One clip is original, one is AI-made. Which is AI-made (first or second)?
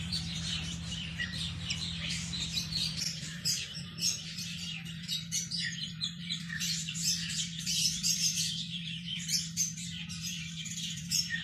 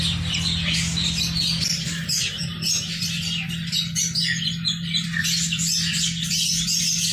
first